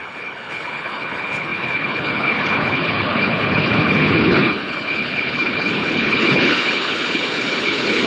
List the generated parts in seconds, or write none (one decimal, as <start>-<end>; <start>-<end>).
0.0-8.1

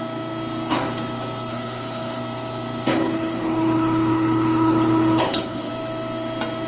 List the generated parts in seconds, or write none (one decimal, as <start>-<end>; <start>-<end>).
1.5-2.2; 2.9-5.7

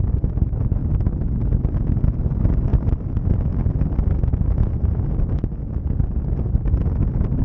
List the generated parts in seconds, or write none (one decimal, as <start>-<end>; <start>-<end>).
none

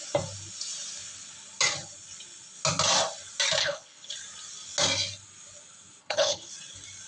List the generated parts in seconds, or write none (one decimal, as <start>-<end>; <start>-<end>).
3.6-4.1; 6.0-6.5

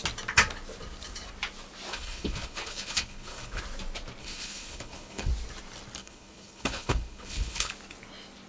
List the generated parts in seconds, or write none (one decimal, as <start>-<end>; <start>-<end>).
1.9-3.6; 4.2-5.3; 6.0-7.7

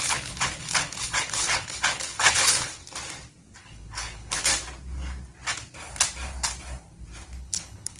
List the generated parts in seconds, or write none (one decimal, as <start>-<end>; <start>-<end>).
0.0-2.8; 3.6-4.5; 7.4-8.0

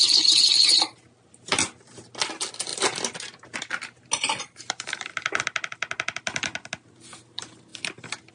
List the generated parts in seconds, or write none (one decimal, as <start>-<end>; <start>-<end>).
none

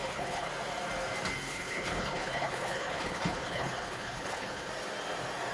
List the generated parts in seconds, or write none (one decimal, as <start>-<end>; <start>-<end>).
0.0-0.5; 1.5-4.7